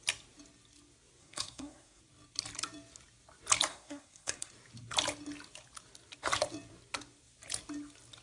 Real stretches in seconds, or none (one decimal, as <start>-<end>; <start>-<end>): 0.0-1.2; 2.0-3.7; 4.5-8.2